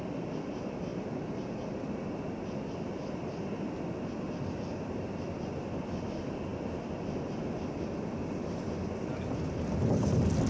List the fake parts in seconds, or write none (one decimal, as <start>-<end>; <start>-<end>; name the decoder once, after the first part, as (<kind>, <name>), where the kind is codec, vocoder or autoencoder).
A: none